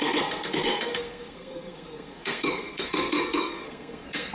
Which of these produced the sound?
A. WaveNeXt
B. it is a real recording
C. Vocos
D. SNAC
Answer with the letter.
D